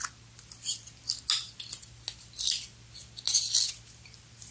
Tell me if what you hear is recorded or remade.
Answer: recorded